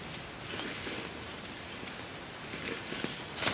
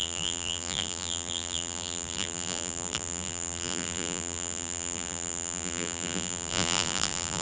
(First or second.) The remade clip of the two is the second